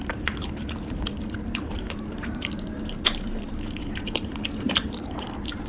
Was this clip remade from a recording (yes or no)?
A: yes